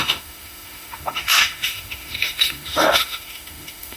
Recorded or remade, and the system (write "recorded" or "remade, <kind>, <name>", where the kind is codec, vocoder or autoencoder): remade, autoencoder, DAC-VAE